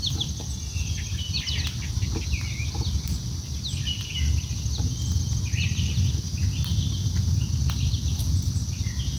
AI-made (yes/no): no